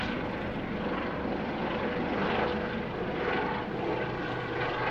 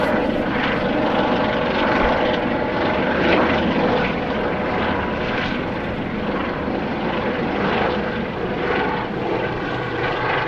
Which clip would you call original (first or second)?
first